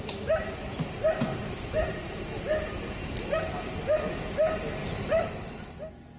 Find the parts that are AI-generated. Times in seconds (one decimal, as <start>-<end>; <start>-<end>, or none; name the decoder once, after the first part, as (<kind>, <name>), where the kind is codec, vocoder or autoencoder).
1.3-3.4 (vocoder, BigVGAN v2); 4.8-5.3